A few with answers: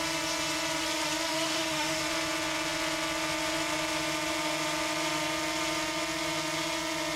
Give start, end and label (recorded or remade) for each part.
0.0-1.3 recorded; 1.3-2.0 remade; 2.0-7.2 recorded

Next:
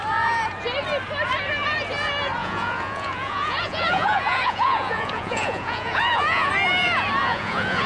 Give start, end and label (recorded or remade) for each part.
0.0-2.4 recorded; 2.4-6.5 remade; 6.5-7.2 recorded; 7.2-7.9 remade

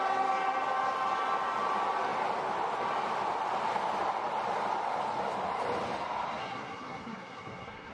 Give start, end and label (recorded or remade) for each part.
0.0-6.4 recorded; 6.4-7.9 remade

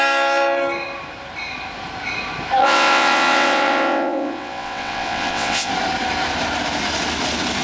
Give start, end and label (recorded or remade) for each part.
0.0-2.6 recorded; 2.6-5.7 remade; 5.7-7.6 recorded

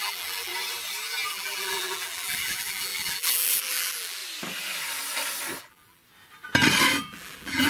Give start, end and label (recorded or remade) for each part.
0.0-0.5 remade; 0.5-1.3 recorded; 1.3-4.2 remade; 4.2-5.6 recorded; 5.6-6.0 remade; 6.0-7.0 recorded; 7.0-7.7 remade

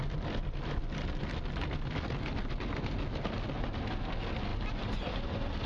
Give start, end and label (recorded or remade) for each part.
0.0-5.7 recorded

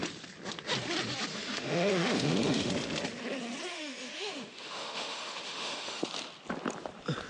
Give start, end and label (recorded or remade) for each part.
0.0-1.3 recorded; 1.3-2.7 remade; 2.7-3.7 recorded; 3.7-6.0 remade; 6.0-7.3 recorded